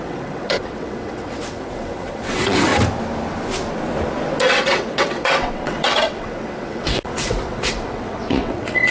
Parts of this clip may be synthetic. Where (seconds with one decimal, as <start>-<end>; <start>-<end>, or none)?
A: 0.0-2.7; 4.5-8.9